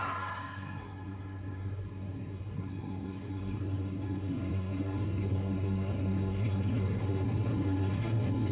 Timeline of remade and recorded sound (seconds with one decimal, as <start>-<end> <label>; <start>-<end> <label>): 0.0-8.5 remade